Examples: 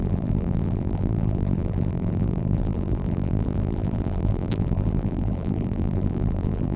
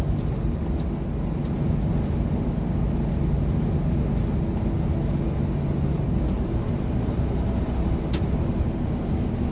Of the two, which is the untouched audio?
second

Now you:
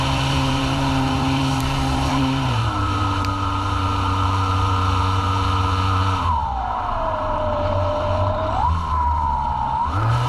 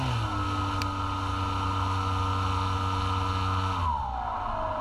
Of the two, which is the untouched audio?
second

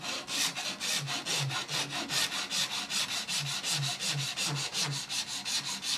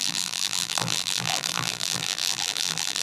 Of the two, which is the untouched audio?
first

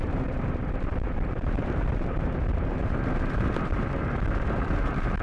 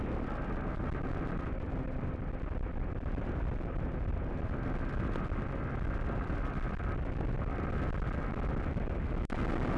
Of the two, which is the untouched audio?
second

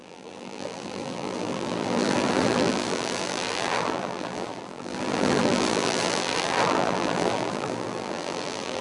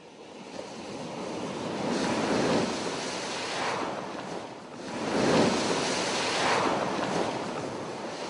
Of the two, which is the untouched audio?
second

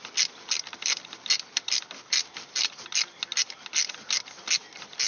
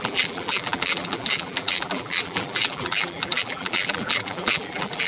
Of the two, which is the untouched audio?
first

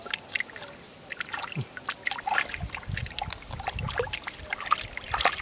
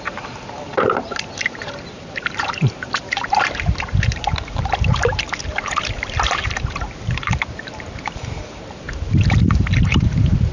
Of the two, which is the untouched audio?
first